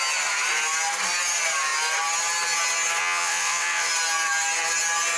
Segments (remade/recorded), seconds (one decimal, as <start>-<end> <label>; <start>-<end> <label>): 0.0-3.0 recorded; 3.0-3.9 remade; 3.9-5.2 recorded